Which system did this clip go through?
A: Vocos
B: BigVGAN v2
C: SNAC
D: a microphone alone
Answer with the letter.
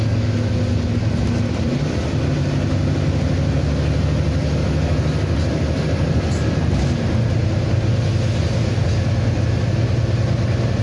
D